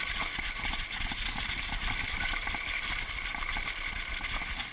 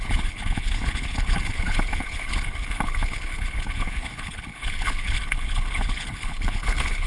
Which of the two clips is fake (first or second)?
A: second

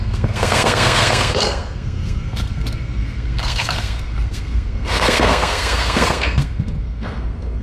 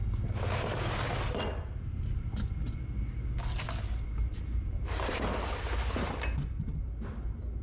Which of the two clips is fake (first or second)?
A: first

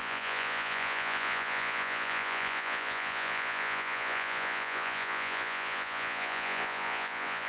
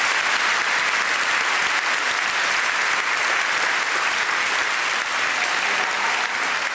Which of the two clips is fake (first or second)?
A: first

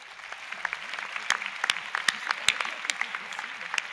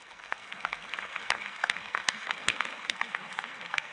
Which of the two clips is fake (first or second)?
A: second